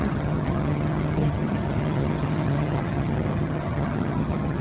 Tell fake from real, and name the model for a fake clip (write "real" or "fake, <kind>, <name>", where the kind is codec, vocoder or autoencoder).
fake, vocoder, HiFi-GAN